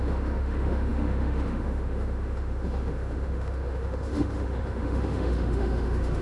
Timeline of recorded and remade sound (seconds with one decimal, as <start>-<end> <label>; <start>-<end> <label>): 0.0-6.2 remade